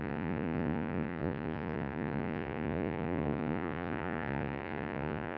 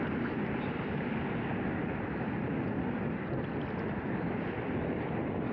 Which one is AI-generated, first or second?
first